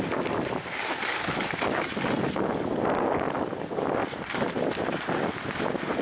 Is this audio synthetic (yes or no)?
no